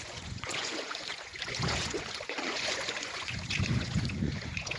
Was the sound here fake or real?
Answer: fake